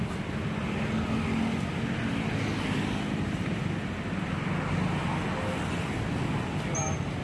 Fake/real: real